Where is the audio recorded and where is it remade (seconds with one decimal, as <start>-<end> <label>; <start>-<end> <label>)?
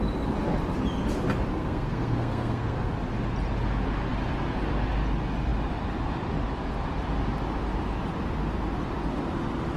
0.0-1.5 recorded; 1.5-2.9 remade; 2.9-9.8 recorded